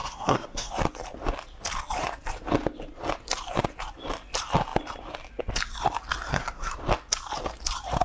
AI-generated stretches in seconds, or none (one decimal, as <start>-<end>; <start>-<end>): 0.0-0.7; 6.3-6.8